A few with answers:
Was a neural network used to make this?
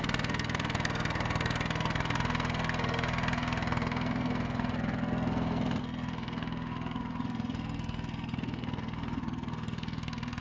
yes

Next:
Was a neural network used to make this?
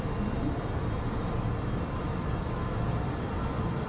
yes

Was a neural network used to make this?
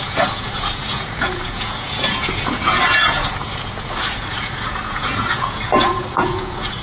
yes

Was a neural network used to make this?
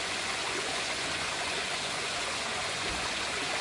yes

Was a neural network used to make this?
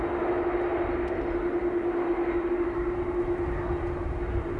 no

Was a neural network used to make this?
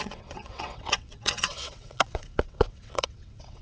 yes